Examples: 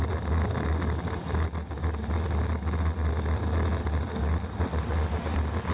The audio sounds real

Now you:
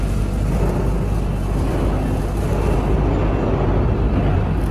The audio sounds real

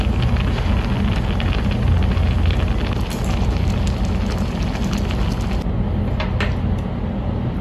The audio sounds real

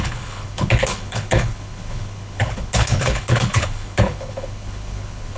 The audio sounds fake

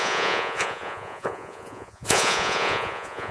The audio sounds fake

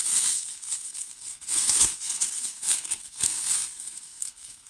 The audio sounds fake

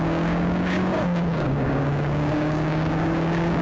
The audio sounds fake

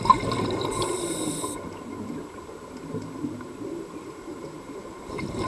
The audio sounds real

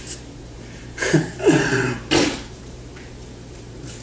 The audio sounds fake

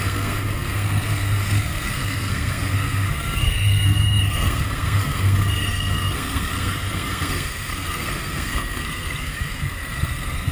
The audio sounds fake